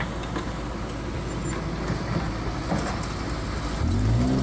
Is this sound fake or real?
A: real